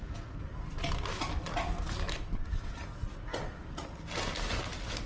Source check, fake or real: real